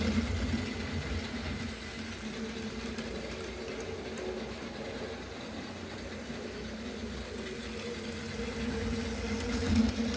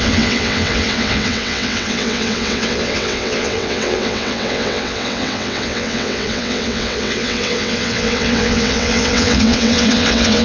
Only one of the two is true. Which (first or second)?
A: first